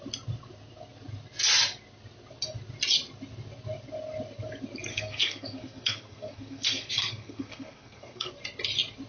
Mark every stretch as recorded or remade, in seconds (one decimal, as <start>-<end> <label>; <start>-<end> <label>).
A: 0.0-4.9 recorded; 4.9-8.3 remade; 8.3-9.1 recorded